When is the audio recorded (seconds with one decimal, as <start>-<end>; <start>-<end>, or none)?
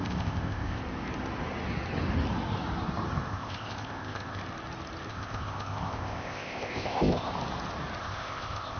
0.8-3.3; 4.4-5.1; 7.3-8.0